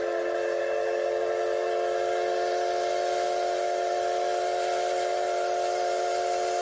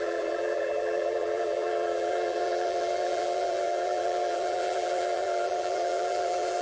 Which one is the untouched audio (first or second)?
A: first